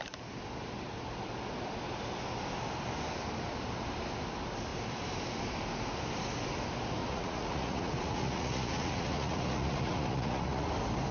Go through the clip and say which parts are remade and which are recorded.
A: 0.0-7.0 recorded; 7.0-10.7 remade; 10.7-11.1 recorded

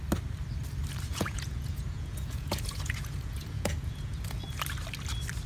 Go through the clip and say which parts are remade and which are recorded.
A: 0.0-1.1 recorded; 1.1-4.4 remade; 4.4-5.5 recorded

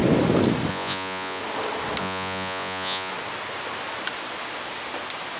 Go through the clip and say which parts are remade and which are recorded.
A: 0.0-0.7 recorded; 0.7-1.4 remade; 1.4-2.0 recorded; 2.0-3.1 remade; 3.1-5.4 recorded

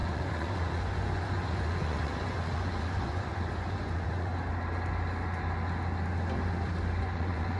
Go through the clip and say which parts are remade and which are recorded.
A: 0.0-4.3 remade; 4.3-7.0 recorded; 7.0-7.6 remade